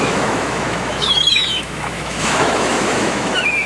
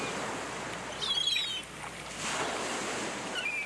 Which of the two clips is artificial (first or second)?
first